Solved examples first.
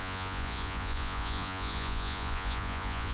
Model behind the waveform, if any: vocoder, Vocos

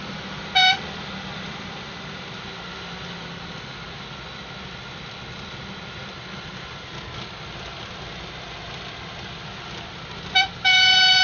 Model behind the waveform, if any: none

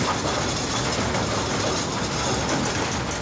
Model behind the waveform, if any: none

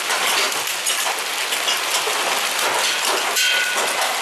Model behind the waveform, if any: none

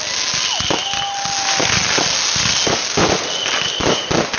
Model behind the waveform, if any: none